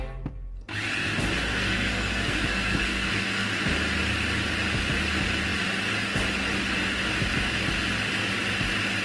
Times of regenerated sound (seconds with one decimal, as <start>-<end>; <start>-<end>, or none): 1.5-3.5

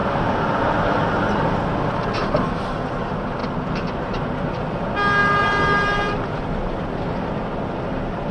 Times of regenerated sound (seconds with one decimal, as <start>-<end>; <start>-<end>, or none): none

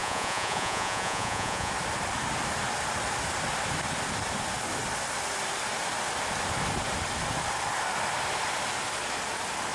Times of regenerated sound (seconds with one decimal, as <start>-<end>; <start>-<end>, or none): 0.0-1.7

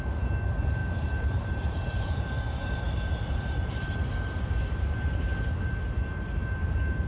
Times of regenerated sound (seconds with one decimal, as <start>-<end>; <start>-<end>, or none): 0.8-5.1

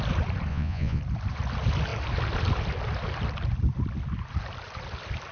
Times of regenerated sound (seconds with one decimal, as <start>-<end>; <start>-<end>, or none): 0.5-1.0

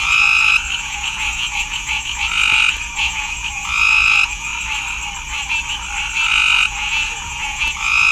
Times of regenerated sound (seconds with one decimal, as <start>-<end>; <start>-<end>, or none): 0.0-4.5; 6.3-8.1